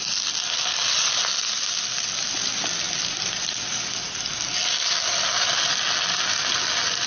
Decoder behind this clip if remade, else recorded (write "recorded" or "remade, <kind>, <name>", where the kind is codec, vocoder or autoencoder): recorded